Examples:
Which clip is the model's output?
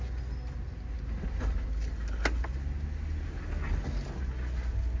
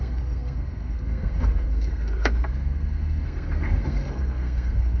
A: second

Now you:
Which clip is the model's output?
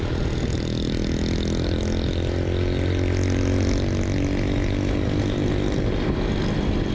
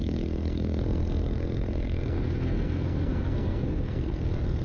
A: second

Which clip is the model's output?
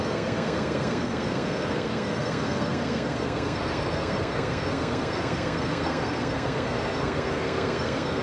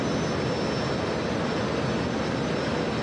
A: first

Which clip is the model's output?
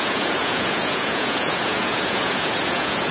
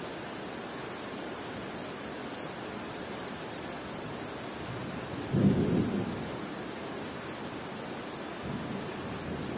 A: first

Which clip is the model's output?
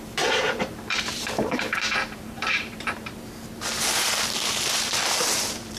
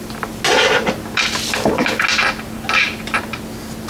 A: first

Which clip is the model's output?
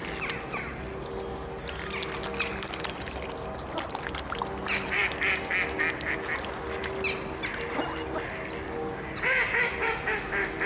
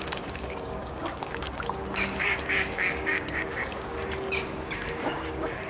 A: second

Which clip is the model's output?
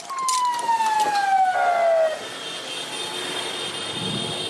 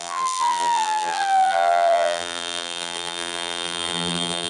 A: second